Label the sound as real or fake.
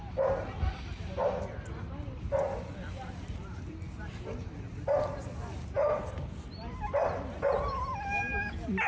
real